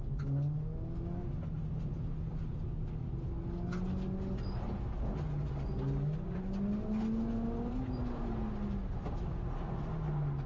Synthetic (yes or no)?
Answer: no